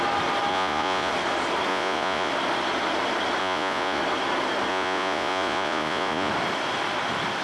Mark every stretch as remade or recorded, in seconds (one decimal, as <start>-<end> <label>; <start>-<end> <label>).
0.0-0.5 recorded; 0.5-1.1 remade; 1.1-1.7 recorded; 1.7-2.3 remade; 2.3-3.4 recorded; 3.4-4.0 remade; 4.0-4.7 recorded; 4.7-6.3 remade; 6.3-7.4 recorded